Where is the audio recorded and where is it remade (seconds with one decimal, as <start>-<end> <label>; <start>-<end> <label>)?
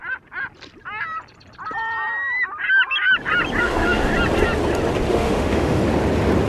0.0-3.6 recorded; 3.6-4.1 remade; 4.1-5.1 recorded; 5.1-5.8 remade; 5.8-6.5 recorded